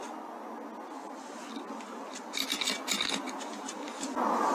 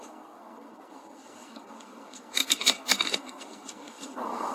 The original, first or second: first